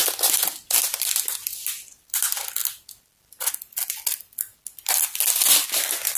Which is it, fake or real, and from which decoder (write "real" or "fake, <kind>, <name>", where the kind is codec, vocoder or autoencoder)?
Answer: real